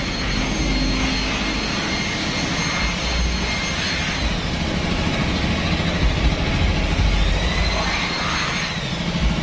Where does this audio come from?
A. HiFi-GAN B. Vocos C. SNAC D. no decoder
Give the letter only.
D